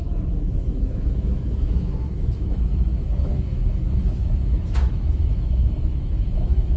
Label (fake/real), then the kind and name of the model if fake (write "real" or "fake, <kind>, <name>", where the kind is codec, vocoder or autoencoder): fake, autoencoder, DAC-VAE